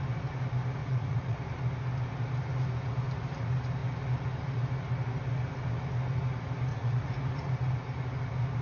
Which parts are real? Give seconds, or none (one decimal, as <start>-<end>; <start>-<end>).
0.0-0.8; 1.4-6.7; 7.5-8.6